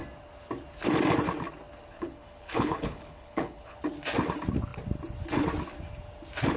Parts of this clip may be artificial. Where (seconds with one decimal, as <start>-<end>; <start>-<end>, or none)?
1.9-3.8